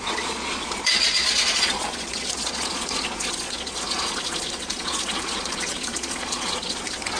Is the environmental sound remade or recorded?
remade